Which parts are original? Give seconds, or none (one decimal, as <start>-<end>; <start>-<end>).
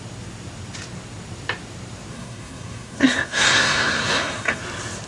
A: 0.0-2.1; 4.6-5.1